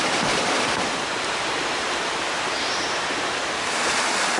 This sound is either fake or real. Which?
real